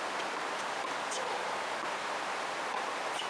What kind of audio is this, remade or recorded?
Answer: recorded